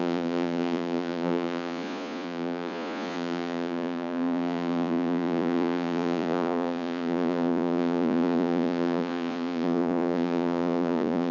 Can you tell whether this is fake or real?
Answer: fake